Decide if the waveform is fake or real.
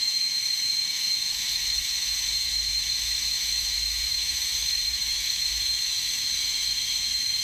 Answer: fake